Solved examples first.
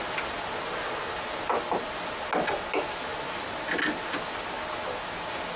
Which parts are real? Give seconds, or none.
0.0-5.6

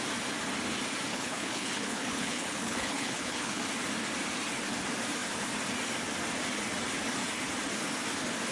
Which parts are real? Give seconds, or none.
0.0-1.1; 3.6-8.5

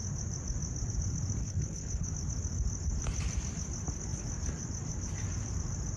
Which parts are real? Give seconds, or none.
0.0-1.4; 2.1-6.0